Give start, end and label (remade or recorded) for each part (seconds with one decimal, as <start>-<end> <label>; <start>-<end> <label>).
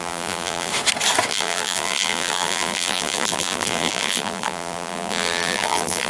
0.0-0.7 remade; 0.7-1.3 recorded; 1.3-6.1 remade